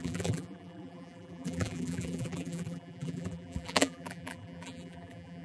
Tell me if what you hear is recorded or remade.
remade